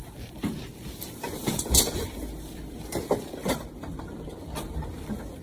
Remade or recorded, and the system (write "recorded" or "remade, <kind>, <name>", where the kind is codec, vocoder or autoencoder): remade, vocoder, BigVGAN v2